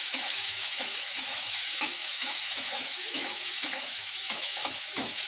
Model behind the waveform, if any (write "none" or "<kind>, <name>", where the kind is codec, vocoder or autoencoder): autoencoder, DAC-VAE